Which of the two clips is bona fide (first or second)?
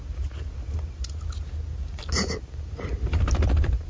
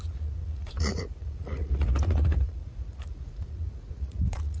first